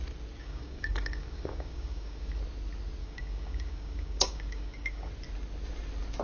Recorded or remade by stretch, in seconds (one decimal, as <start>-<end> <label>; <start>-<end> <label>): 0.0-0.4 recorded; 0.4-2.4 remade; 2.4-3.0 recorded; 3.0-5.1 remade; 5.1-6.2 recorded